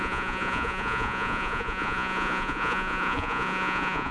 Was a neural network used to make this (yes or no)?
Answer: yes